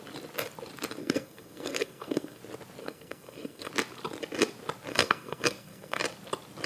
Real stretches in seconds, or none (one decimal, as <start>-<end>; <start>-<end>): 0.0-1.0; 2.4-2.8; 3.7-4.9; 6.0-6.7